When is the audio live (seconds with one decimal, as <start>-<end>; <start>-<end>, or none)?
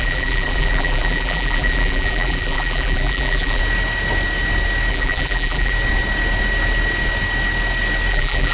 3.6-4.9; 5.7-8.1